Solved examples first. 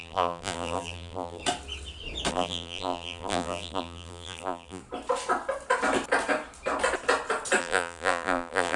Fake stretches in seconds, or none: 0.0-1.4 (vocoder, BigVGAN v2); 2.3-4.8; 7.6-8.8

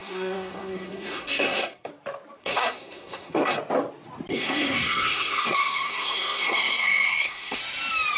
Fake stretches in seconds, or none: 0.0-1.9 (codec, SNAC); 2.4-3.6; 4.3-7.6

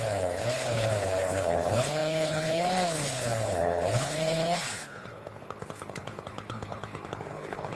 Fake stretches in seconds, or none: 0.0-7.8 (codec, HILCodec)

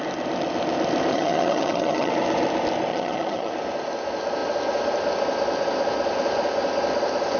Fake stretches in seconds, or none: 1.1-2.1 (vocoder, HiFi-GAN); 2.9-3.5

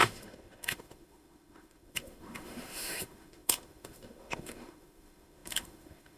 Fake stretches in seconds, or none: 0.0-6.2 (autoencoder, DAC-VAE)